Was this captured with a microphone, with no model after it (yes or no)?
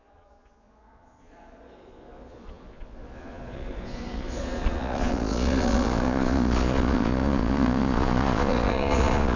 no